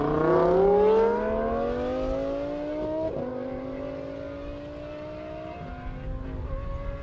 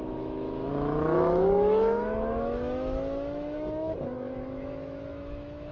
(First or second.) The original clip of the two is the first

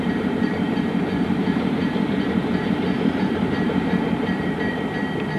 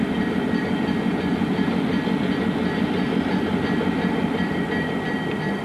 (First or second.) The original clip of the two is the second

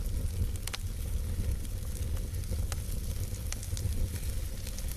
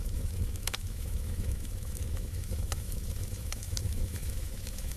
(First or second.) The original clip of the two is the first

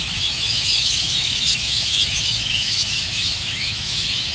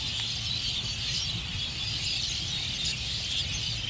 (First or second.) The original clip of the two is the second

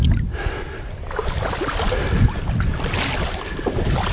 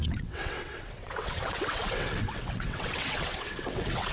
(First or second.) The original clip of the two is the first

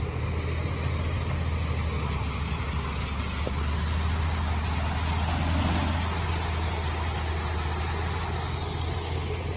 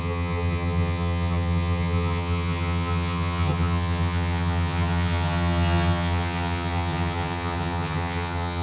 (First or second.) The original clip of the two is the first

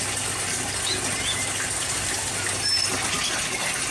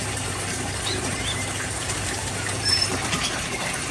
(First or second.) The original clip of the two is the first